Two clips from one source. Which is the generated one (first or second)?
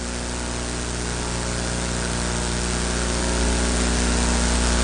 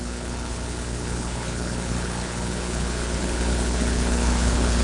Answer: second